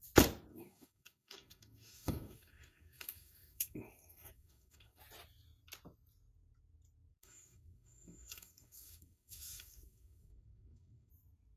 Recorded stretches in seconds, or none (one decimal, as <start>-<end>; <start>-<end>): 0.0-0.5; 5.0-7.1; 11.1-11.6